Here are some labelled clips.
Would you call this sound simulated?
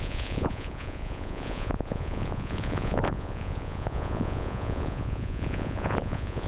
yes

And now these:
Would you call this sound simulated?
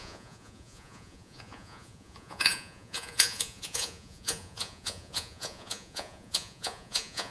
yes